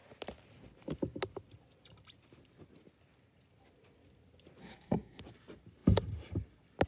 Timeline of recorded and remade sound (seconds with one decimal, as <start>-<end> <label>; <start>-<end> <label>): 0.0-4.6 recorded; 4.6-5.2 remade; 5.2-6.9 recorded